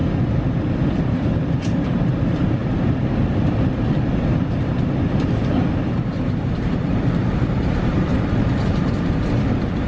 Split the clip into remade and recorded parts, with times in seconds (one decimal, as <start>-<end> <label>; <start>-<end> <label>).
0.0-0.9 recorded; 0.9-2.6 remade; 2.6-5.7 recorded; 5.7-8.1 remade; 8.1-8.7 recorded; 8.7-9.9 remade